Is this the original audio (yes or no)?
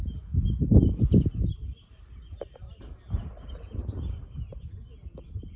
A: yes